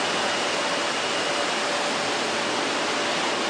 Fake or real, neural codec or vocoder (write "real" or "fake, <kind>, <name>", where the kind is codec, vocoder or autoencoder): real